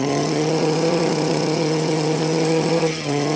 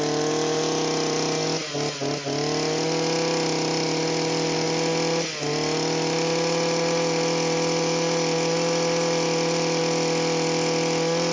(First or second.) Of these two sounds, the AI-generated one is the first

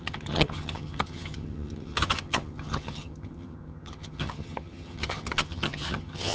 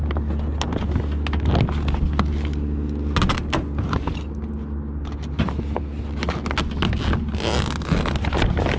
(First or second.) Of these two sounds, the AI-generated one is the first